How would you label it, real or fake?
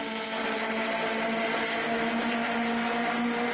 real